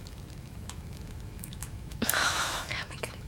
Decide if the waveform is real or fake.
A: fake